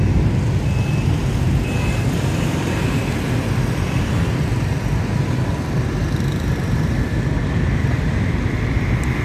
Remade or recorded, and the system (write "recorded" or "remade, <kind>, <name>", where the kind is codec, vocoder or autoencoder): recorded